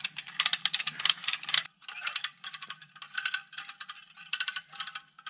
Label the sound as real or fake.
real